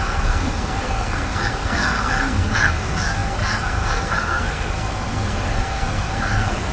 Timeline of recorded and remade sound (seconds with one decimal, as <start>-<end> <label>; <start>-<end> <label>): 0.0-6.7 remade